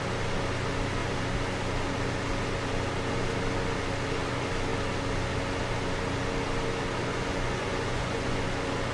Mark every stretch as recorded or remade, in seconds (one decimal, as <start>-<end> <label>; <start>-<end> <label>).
0.0-7.1 recorded; 7.1-8.4 remade; 8.4-8.9 recorded